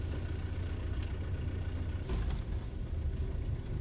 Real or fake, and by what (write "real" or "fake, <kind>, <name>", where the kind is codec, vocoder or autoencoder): real